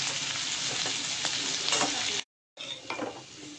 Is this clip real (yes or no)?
yes